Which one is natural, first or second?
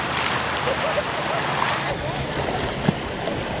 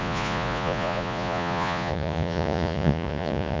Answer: first